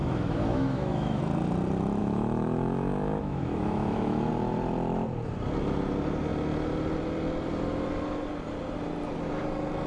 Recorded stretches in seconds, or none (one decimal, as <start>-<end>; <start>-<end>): 1.2-2.0; 4.3-9.9